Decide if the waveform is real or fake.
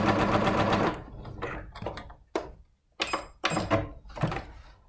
real